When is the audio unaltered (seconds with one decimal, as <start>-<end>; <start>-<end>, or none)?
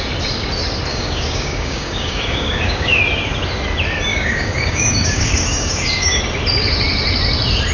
0.0-0.9; 3.0-4.1; 6.2-7.7